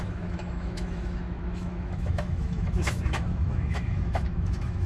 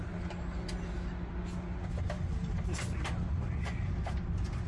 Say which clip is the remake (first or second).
first